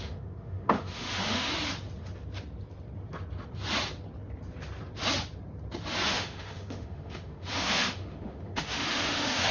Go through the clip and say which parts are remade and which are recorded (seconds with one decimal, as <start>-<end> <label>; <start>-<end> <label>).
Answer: 0.0-1.5 remade; 1.5-6.1 recorded; 6.1-9.5 remade